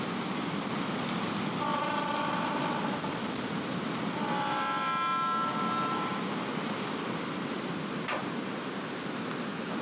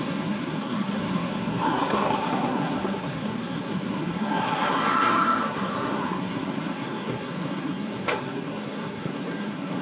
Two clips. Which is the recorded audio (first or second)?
first